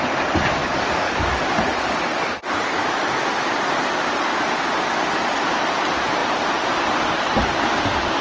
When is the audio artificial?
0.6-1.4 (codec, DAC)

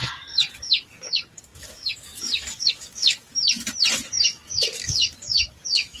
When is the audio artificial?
0.0-3.3 (codec, DAC); 4.1-6.0